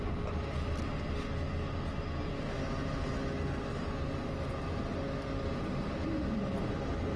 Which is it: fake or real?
real